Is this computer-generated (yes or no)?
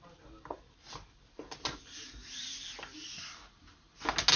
no